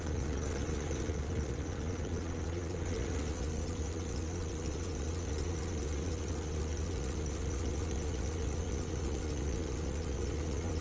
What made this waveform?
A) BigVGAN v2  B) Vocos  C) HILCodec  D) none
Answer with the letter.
B